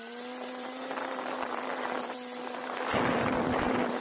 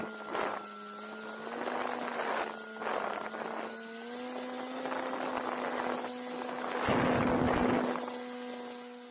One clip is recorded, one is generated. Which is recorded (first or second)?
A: second